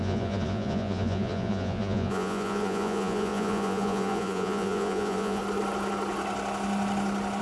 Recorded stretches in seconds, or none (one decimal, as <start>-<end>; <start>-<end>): 5.4-7.4